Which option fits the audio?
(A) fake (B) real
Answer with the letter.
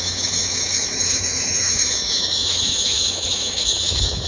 A